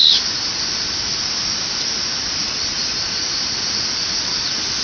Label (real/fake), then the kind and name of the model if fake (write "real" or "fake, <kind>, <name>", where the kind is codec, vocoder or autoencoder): real